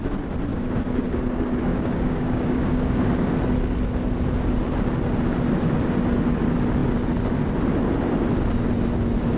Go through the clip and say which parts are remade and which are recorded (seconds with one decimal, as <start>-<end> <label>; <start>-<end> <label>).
0.0-0.5 recorded; 0.5-3.1 remade; 3.1-9.4 recorded